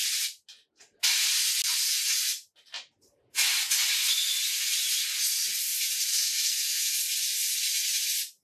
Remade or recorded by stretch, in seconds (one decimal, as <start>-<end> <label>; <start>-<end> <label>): 0.0-6.1 recorded; 6.1-7.0 remade; 7.0-8.4 recorded